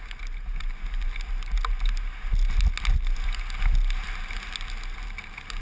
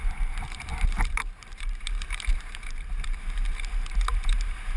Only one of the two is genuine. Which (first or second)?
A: first